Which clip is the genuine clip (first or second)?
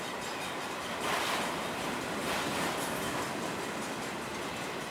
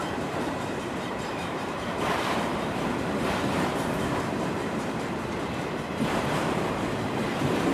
first